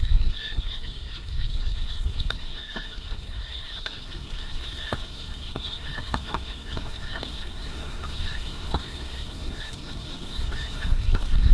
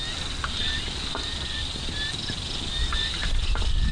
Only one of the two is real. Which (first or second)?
second